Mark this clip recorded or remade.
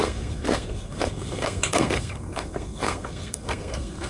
remade